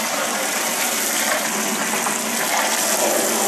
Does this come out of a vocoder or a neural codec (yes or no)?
no